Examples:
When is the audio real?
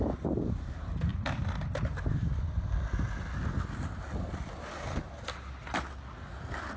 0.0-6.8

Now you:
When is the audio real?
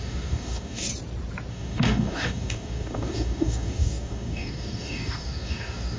0.9-1.5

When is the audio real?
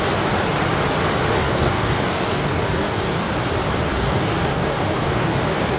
0.0-1.4; 3.3-3.9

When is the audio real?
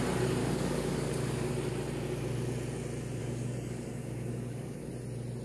0.0-0.4; 1.5-3.2; 4.9-5.4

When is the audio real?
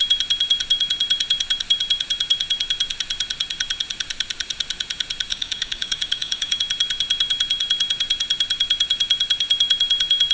0.0-5.3; 6.6-10.3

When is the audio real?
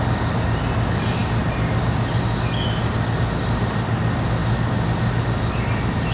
0.0-6.1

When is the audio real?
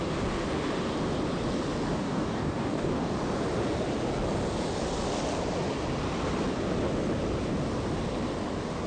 0.0-1.9; 3.1-8.9